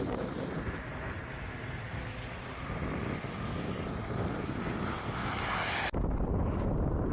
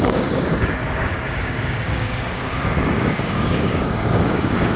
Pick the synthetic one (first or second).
second